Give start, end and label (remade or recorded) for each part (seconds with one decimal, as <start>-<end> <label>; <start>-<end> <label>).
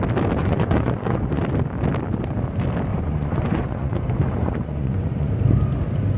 0.0-0.4 recorded; 0.4-1.4 remade; 1.4-2.9 recorded; 2.9-5.3 remade; 5.3-6.2 recorded